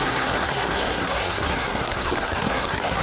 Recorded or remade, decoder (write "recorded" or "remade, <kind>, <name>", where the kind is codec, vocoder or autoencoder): remade, codec, SNAC